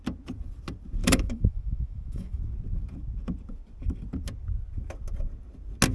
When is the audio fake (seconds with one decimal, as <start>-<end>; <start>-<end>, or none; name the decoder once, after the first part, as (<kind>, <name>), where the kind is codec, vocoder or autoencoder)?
1.0-2.4 (autoencoder, DAC-VAE)